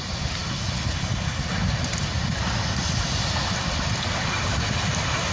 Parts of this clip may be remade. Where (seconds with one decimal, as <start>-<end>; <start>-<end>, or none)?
none